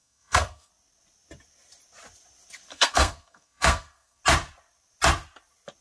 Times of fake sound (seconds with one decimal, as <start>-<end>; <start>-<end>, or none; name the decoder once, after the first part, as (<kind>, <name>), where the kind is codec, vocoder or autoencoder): 0.0-0.7 (codec, SNAC); 2.7-4.2

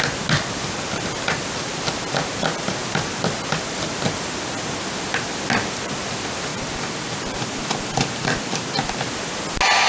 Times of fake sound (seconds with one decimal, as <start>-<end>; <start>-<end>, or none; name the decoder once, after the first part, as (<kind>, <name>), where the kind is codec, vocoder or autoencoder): 6.5-9.0 (vocoder, BigVGAN v2)

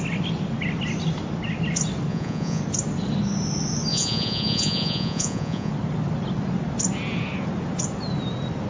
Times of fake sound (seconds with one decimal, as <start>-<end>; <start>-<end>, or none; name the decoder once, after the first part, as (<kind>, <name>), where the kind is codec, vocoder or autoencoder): 2.1-2.6 (vocoder, Vocos); 3.9-5.7

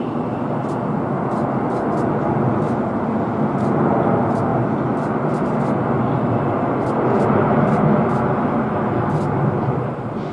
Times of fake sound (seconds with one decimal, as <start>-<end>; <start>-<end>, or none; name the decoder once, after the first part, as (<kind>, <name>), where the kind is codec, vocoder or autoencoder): none

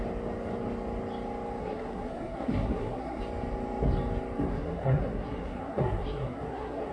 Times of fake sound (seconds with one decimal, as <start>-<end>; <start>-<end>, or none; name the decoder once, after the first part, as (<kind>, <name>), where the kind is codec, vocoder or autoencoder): 1.6-3.2 (codec, SNAC); 4.5-6.9